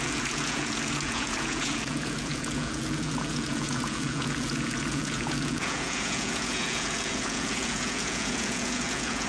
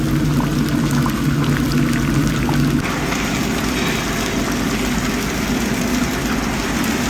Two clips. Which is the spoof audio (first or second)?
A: first